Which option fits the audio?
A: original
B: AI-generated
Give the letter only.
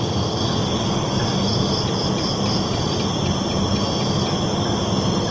A